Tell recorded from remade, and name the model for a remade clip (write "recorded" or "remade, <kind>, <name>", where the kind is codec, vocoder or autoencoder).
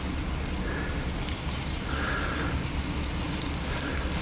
recorded